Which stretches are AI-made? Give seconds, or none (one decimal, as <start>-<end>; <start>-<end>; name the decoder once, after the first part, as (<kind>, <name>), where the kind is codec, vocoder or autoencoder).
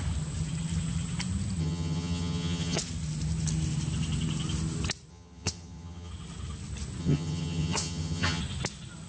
1.6-2.8 (vocoder, HiFi-GAN); 5.1-6.1; 7.0-8.4